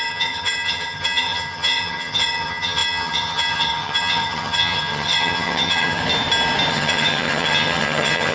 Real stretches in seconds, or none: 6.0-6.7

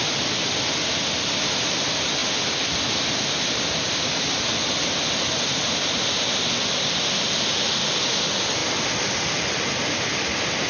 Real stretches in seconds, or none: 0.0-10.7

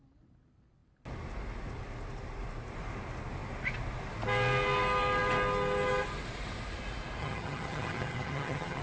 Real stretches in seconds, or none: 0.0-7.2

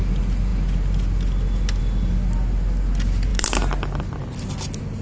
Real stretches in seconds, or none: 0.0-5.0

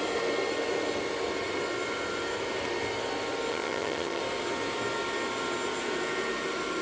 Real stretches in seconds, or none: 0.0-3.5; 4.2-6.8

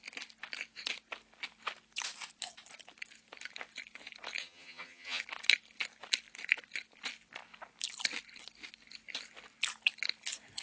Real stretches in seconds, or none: 0.0-4.4; 5.2-10.6

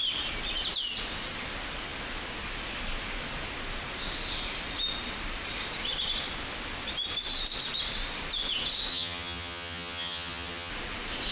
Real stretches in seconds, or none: 0.0-8.9; 10.7-11.3

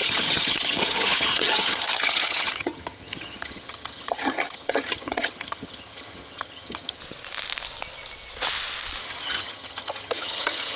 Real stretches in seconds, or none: 7.0-9.0